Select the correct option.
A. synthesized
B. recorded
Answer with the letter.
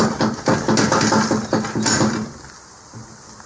B